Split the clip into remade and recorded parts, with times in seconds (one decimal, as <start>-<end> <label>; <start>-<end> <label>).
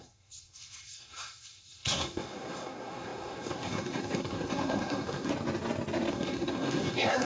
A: 0.0-5.3 remade; 5.3-6.1 recorded; 6.1-7.2 remade